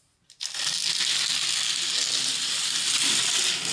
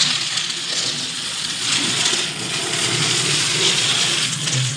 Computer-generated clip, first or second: second